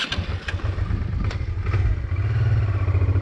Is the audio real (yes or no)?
yes